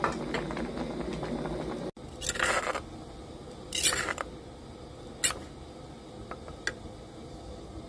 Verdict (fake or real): real